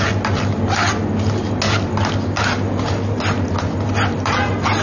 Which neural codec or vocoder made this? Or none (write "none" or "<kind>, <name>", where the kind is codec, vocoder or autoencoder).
none